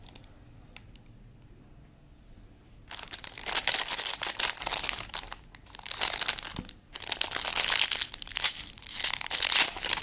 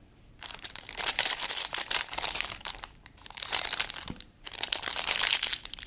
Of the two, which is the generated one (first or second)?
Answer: second